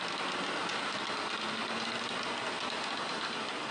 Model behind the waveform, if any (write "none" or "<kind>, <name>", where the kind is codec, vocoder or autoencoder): none